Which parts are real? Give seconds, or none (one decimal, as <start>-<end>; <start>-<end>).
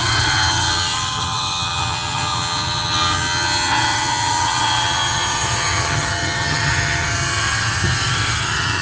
none